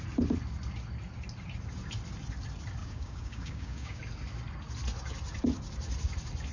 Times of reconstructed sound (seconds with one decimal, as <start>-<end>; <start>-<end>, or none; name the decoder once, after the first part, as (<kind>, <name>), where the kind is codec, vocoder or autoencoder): 2.8-4.0 (codec, DAC)